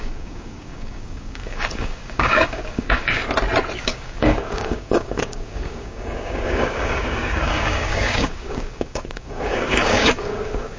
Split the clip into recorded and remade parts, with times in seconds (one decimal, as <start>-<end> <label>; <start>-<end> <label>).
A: 0.0-3.2 remade; 3.2-3.8 recorded; 3.8-10.8 remade